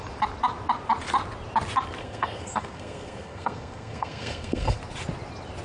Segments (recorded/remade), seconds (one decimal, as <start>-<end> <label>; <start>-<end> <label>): 0.0-2.0 recorded; 2.0-4.8 remade; 4.8-5.6 recorded